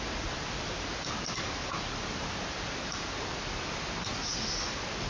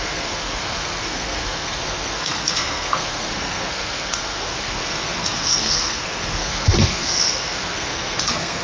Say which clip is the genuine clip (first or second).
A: first